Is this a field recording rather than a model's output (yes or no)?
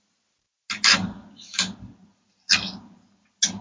yes